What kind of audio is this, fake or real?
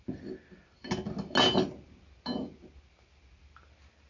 real